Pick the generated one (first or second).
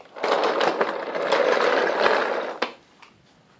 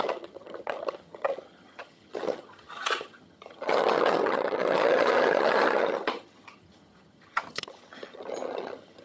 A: second